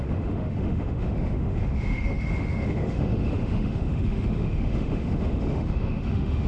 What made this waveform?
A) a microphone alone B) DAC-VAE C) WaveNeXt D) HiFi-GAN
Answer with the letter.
B